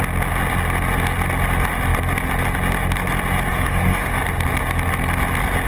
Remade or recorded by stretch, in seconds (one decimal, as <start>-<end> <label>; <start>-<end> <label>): 0.0-3.5 recorded; 3.5-4.2 remade; 4.2-5.7 recorded